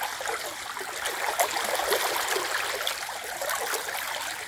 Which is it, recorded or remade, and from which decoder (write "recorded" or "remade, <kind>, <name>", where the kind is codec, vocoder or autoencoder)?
recorded